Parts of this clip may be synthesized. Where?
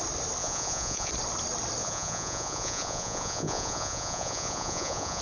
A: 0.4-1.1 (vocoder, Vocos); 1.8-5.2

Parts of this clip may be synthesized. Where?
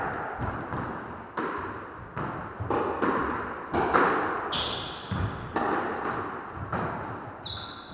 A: none